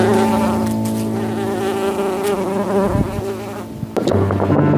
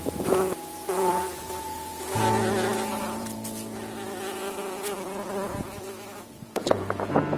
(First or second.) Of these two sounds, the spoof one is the second